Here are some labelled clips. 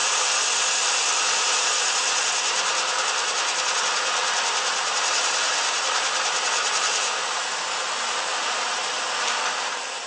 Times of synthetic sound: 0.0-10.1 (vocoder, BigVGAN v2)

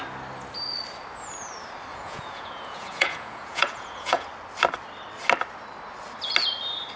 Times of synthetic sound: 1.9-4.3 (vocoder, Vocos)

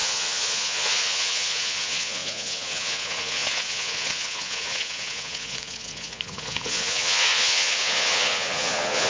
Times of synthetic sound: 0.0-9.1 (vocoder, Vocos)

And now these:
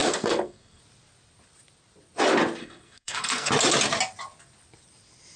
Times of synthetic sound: 0.0-0.8 (codec, SNAC); 2.6-3.5